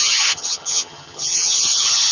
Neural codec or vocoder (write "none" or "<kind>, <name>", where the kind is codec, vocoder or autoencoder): vocoder, HiFi-GAN